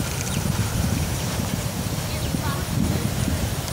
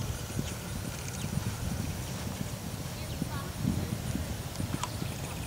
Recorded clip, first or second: second